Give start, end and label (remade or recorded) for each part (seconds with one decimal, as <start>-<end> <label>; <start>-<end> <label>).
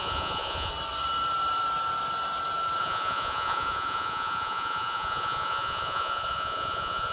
0.0-0.7 remade; 0.7-2.8 recorded; 2.8-7.1 remade